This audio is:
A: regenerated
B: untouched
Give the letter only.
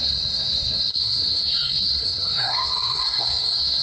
A